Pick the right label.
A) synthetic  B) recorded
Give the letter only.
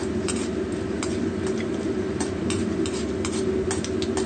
B